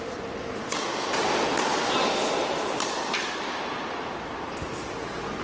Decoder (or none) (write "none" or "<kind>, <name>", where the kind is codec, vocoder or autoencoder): none